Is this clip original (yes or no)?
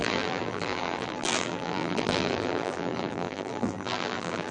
no